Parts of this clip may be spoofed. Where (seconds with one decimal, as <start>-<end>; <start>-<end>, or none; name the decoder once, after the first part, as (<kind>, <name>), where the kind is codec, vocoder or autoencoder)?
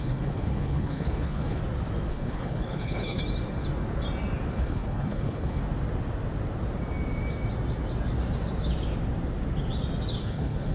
0.0-1.6 (codec, HILCodec); 2.1-3.2; 4.5-5.6; 10.2-10.7